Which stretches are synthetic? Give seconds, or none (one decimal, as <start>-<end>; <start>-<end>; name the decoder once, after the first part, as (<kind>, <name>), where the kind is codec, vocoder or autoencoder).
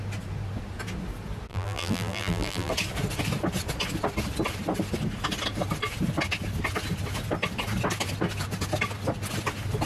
1.5-2.7 (vocoder, BigVGAN v2)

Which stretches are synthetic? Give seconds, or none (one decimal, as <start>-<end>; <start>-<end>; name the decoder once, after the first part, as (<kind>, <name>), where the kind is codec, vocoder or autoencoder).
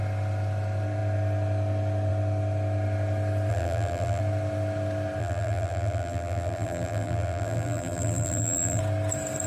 3.5-4.2 (vocoder, BigVGAN v2); 5.2-8.8